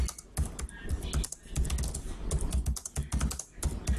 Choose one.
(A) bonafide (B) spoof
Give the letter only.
A